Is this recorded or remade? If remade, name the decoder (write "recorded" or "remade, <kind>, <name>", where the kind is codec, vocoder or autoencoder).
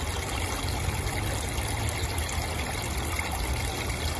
recorded